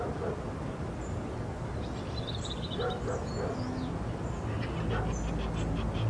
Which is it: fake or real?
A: real